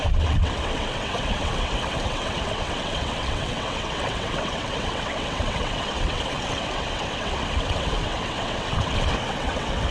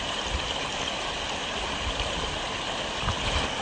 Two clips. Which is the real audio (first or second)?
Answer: second